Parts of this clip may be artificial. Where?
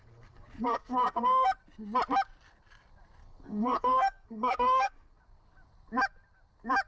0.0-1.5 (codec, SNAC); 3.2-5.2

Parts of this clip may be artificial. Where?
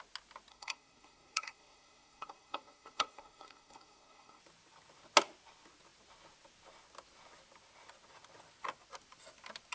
0.5-4.4 (codec, SNAC)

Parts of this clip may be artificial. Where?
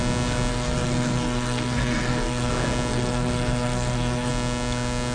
0.5-2.5 (codec, SNAC); 2.9-4.3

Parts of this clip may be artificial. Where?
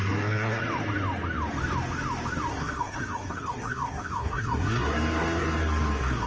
0.0-0.6 (codec, SNAC); 2.5-6.3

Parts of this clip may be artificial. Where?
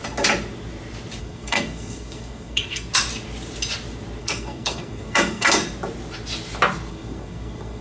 1.2-2.9 (codec, SNAC); 4.2-5.6; 6.9-7.8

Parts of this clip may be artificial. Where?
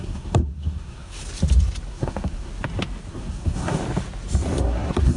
0.0-1.2 (codec, SNAC); 1.9-2.5; 3.1-3.8; 4.6-5.2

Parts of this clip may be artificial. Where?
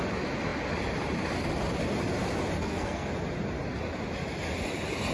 2.6-3.1 (codec, SNAC)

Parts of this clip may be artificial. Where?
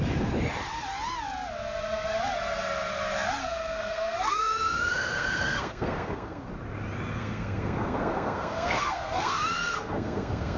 3.4-6.5 (codec, SNAC); 7.1-10.6